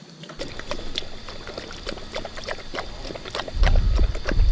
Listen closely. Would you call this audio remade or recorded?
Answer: recorded